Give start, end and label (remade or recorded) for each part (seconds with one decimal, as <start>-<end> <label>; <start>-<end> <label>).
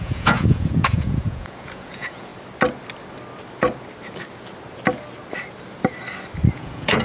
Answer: 0.0-2.3 remade; 2.3-6.5 recorded; 6.5-7.0 remade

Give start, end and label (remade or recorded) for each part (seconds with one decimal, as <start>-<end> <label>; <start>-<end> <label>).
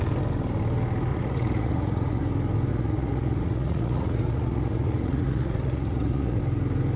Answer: 0.0-1.1 recorded; 1.1-2.2 remade; 2.2-2.7 recorded; 2.7-6.4 remade; 6.4-7.0 recorded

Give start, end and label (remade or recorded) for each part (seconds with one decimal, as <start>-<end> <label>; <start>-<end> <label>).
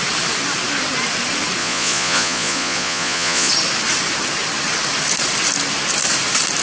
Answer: 0.0-1.6 recorded; 1.6-3.5 remade; 3.5-6.6 recorded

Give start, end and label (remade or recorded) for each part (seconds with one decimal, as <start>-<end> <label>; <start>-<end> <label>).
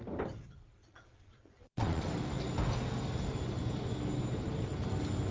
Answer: 0.0-0.8 recorded; 0.8-2.0 remade; 2.0-5.3 recorded